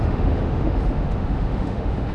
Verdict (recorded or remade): remade